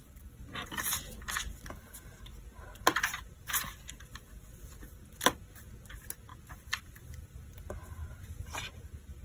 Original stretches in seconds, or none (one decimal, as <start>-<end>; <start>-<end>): 0.0-9.2